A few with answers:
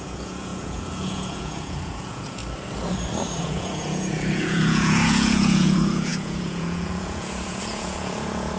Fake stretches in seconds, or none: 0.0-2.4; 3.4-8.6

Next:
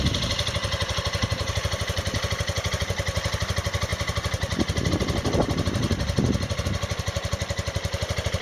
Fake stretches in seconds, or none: none

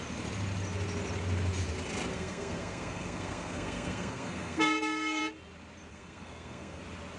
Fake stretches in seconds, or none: 2.1-5.2; 5.9-6.8

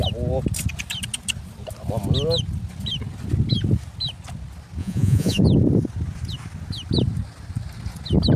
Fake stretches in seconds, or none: 4.8-5.4